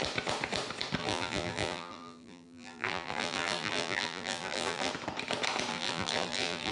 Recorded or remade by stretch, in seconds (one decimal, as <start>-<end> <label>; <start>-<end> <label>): 0.0-1.0 recorded; 1.0-4.9 remade; 4.9-5.7 recorded; 5.7-6.7 remade